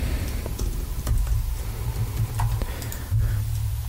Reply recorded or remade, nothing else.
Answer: remade